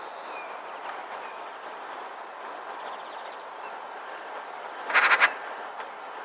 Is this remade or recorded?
recorded